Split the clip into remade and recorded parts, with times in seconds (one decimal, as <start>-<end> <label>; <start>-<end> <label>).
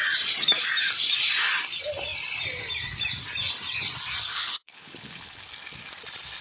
0.0-4.3 recorded; 4.3-5.4 remade; 5.4-6.4 recorded